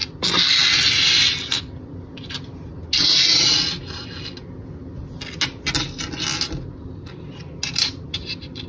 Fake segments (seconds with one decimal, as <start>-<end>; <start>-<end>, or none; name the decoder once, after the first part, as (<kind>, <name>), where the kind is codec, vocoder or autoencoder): none